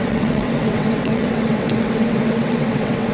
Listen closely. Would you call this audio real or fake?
fake